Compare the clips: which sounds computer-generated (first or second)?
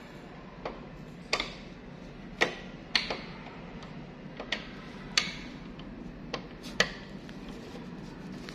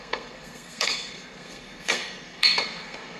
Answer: second